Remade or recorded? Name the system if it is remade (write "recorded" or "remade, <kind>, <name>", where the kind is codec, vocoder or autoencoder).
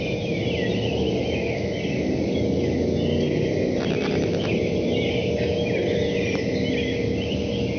recorded